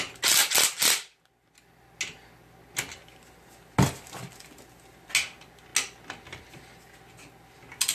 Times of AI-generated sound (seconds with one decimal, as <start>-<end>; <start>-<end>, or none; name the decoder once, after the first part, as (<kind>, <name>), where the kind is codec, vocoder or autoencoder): none